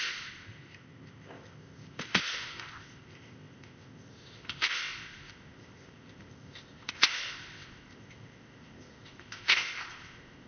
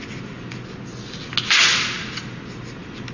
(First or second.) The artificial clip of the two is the first